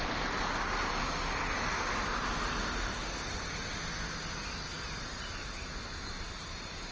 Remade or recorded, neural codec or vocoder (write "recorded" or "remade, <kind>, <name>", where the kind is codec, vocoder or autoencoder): recorded